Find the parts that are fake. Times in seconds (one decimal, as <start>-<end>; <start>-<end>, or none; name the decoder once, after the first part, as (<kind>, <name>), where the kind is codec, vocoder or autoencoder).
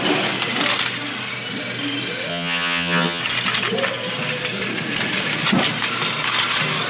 2.3-3.2 (vocoder, HiFi-GAN)